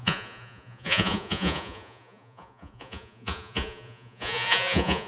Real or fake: fake